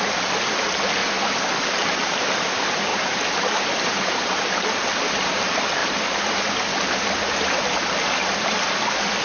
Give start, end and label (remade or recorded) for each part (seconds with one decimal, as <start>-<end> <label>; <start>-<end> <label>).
0.0-1.0 recorded; 1.0-2.3 remade; 2.3-2.9 recorded; 2.9-4.1 remade; 4.1-9.2 recorded